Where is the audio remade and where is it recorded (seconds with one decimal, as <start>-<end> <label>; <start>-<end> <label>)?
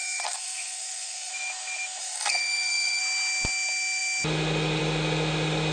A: 0.0-1.3 remade; 1.3-2.0 recorded; 2.0-3.0 remade; 3.0-5.7 recorded